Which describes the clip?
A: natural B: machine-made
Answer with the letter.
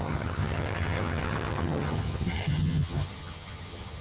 B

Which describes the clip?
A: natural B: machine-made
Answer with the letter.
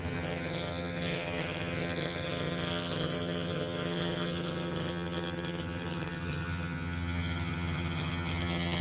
B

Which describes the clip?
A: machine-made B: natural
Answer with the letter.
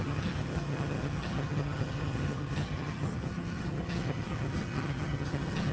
A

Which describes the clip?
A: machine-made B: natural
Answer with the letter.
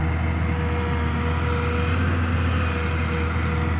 B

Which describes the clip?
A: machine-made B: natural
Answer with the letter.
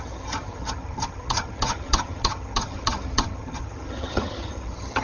A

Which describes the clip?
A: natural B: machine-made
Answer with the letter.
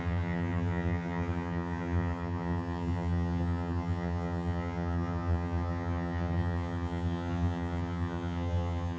B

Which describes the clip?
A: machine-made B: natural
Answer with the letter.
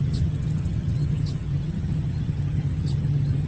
A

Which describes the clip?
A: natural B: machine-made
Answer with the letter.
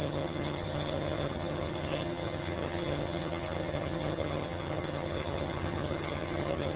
B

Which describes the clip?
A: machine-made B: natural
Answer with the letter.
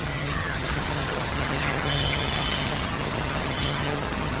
A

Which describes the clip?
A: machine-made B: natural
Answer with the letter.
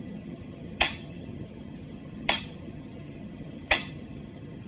A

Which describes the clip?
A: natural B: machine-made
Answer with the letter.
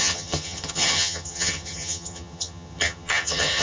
B